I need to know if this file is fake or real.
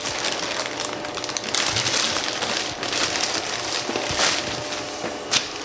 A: real